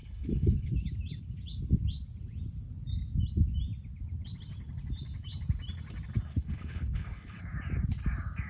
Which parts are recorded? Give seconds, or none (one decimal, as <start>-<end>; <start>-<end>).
0.7-6.3; 7.4-8.5